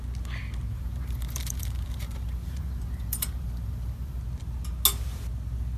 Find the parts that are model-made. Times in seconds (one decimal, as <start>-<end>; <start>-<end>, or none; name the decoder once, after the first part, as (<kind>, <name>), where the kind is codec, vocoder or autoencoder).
0.7-4.2 (vocoder, BigVGAN v2)